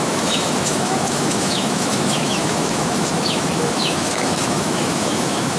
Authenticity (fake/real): fake